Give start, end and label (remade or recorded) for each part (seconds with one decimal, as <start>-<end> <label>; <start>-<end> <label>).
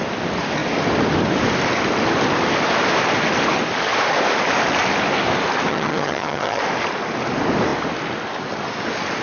0.0-5.7 recorded; 5.7-6.6 remade; 6.6-9.2 recorded